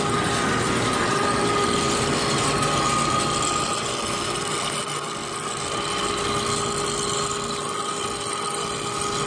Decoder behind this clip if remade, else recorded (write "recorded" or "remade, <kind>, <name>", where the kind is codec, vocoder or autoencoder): recorded